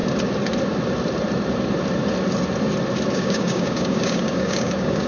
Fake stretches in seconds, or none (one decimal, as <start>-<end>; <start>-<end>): 3.1-5.1